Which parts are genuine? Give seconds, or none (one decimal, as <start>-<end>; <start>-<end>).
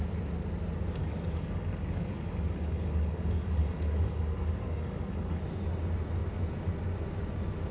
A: 0.0-1.0; 5.4-7.7